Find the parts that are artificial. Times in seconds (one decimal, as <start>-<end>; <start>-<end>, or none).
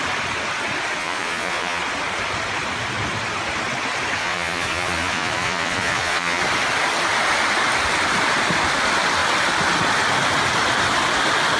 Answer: 1.0-1.8; 4.2-6.4